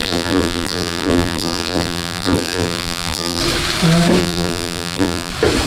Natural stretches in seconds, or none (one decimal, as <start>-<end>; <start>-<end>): 3.4-4.2; 5.3-5.7